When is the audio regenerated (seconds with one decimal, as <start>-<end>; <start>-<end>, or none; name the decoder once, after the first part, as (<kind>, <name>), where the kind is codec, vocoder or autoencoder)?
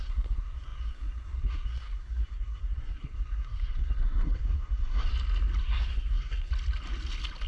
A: 0.0-5.1 (codec, SNAC); 5.6-6.5